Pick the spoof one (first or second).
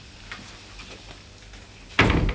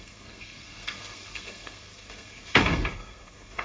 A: second